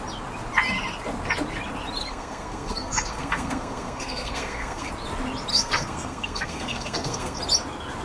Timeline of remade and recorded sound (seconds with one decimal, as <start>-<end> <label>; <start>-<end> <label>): 0.0-2.0 recorded; 2.0-4.9 remade; 4.9-5.5 recorded; 5.5-7.4 remade; 7.4-8.0 recorded